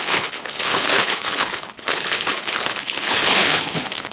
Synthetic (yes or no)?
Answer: yes